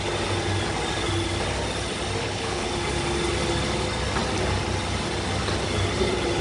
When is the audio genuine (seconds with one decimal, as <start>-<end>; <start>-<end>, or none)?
0.0-2.2; 2.7-6.4